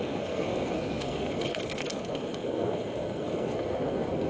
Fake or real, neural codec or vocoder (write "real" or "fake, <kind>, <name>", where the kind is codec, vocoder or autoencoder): fake, codec, SNAC